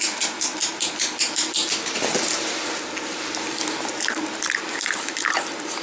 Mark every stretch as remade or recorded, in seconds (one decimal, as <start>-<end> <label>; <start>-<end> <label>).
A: 0.0-5.8 recorded